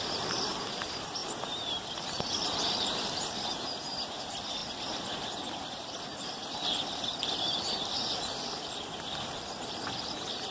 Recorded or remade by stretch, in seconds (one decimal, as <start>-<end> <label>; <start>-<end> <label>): 0.0-10.5 recorded